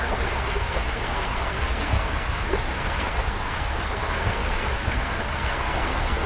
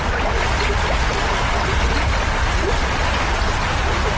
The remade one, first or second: first